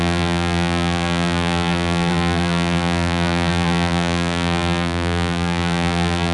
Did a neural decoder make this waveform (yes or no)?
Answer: yes